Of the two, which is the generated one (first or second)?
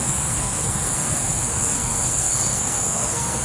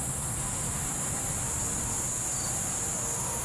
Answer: first